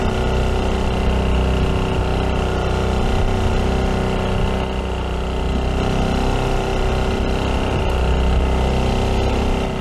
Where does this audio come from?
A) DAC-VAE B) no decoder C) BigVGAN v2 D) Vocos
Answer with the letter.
B